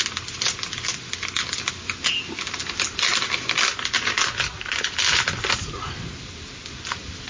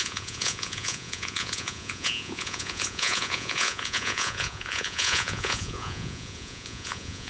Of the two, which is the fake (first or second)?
second